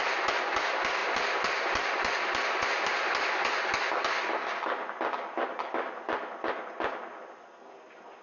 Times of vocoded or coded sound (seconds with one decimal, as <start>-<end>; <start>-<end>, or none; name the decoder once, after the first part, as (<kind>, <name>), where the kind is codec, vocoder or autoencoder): none